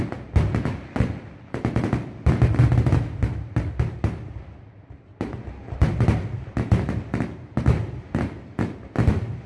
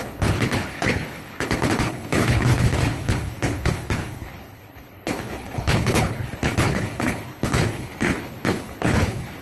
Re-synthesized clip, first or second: second